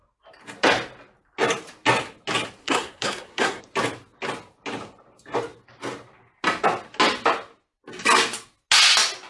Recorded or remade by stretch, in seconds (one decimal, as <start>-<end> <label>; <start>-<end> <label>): 0.0-2.6 recorded; 2.6-3.6 remade; 3.6-9.3 recorded